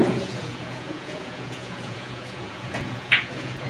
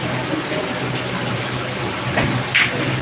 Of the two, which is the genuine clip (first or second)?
second